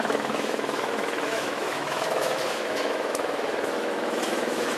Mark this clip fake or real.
fake